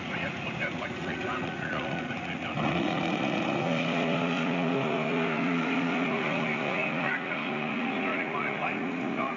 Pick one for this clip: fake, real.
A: fake